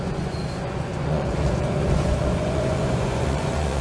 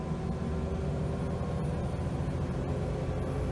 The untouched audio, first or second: second